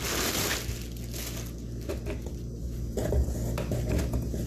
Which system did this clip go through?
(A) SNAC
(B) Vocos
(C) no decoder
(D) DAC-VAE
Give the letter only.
C